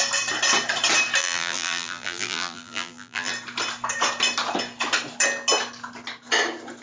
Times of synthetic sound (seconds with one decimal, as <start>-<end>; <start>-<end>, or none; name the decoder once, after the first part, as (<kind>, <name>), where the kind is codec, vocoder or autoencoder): 1.2-3.3 (vocoder, BigVGAN v2)